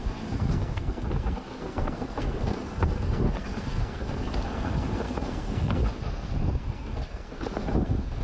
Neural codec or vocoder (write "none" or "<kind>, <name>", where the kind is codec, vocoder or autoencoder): codec, SNAC